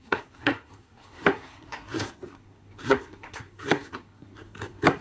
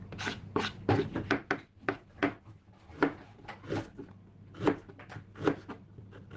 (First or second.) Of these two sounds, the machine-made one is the first